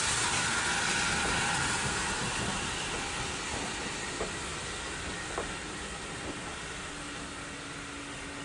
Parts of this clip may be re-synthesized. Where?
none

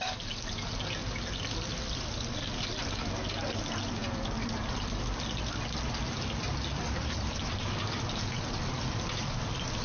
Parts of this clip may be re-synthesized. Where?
none

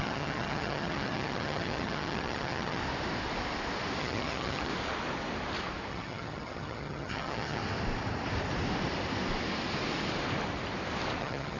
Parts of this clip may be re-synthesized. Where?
0.0-2.8; 4.0-4.7; 5.9-7.6; 11.2-11.6

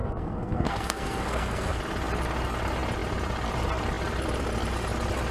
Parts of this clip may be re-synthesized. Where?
0.0-1.8

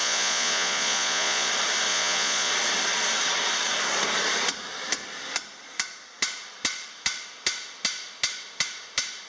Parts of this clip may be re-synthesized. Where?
0.0-1.5; 1.9-2.5

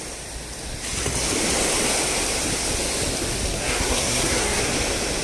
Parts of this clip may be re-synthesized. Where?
3.5-4.6

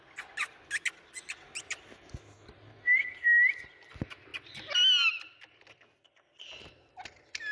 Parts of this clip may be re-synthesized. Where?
none